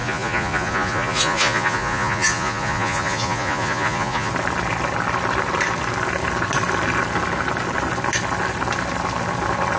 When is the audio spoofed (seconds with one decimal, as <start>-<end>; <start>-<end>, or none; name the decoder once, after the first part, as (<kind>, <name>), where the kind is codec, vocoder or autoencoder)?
0.0-4.3 (vocoder, Vocos)